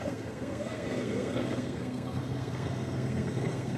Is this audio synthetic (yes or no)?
yes